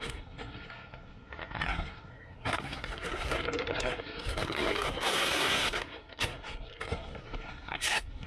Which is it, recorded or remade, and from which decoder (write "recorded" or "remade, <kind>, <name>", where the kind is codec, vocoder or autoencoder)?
remade, codec, SNAC